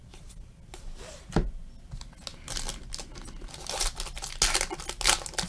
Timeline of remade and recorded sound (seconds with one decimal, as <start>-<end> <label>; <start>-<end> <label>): 0.0-5.5 recorded